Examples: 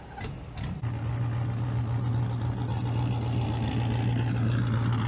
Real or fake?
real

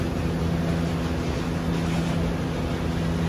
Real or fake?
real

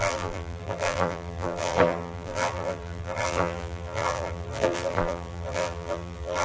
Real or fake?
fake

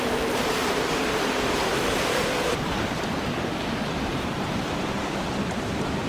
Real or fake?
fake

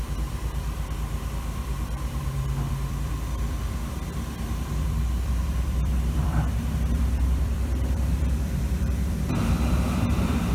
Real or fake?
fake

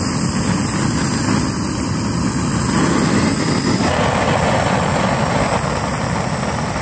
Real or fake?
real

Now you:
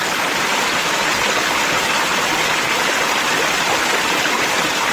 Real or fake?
real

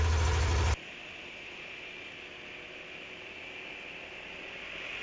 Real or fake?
real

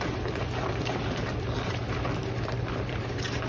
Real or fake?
fake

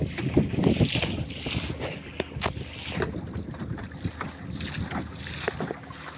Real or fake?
real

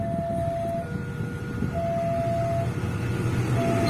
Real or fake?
real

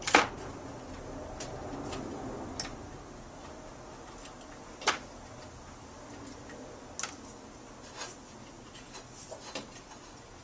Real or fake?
real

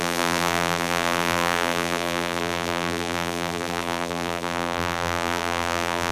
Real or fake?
fake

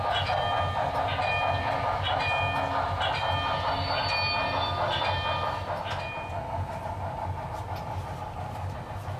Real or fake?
real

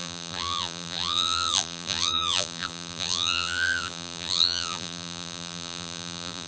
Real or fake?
fake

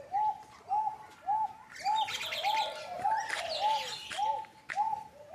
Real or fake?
real